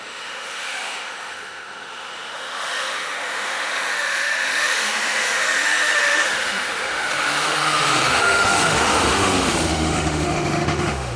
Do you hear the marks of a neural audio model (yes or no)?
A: yes